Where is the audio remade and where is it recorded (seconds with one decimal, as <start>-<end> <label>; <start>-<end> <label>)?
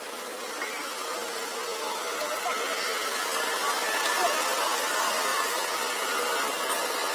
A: 0.0-7.1 recorded